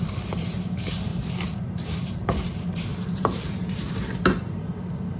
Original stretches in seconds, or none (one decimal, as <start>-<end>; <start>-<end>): none